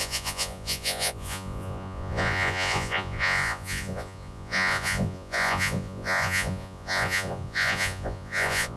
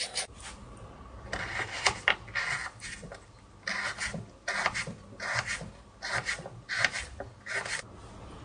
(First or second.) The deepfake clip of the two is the first